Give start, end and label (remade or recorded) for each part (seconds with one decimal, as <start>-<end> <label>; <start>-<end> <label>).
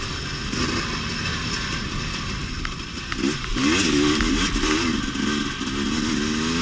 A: 0.0-1.3 recorded; 1.3-2.0 remade; 2.0-6.6 recorded